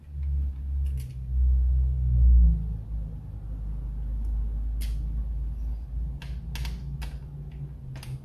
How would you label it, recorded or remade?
recorded